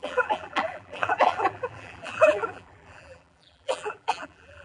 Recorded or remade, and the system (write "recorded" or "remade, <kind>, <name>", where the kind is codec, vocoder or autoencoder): remade, vocoder, BigVGAN v2